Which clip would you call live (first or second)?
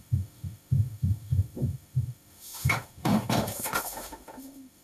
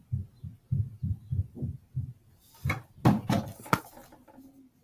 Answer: second